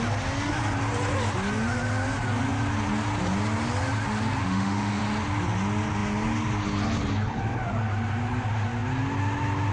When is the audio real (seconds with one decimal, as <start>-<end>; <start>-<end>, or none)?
0.0-4.4; 5.0-9.7